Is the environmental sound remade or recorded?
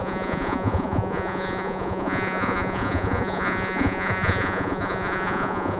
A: remade